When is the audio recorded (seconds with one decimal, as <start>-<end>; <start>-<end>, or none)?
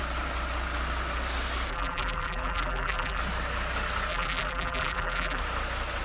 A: 0.0-1.7; 3.2-4.1; 5.4-6.0